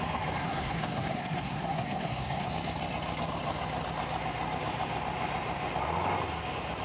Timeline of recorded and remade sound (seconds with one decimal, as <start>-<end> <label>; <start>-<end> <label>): 0.0-0.4 recorded; 0.4-2.5 remade; 2.5-6.8 recorded